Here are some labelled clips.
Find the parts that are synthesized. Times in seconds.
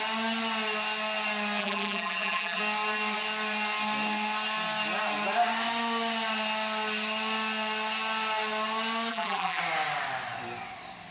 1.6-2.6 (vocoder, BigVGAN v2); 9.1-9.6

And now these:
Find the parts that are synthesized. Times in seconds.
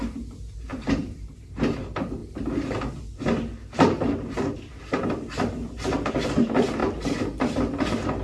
0.7-1.4 (vocoder, BigVGAN v2)